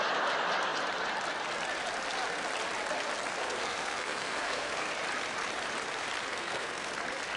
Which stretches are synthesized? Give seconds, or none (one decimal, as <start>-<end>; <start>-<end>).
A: 3.4-4.9; 6.3-6.9